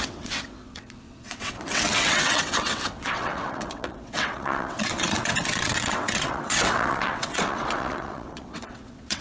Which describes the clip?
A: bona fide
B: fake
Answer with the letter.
B